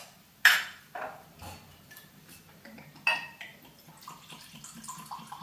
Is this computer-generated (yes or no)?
no